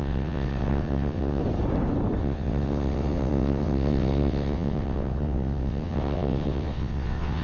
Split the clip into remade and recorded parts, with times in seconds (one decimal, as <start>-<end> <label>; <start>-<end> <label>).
0.0-1.4 remade; 1.4-2.2 recorded; 2.2-7.4 remade